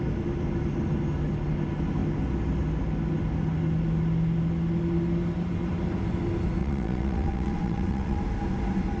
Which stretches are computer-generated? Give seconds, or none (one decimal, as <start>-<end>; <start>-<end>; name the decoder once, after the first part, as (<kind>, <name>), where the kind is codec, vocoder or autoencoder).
6.6-8.2 (vocoder, WaveNeXt)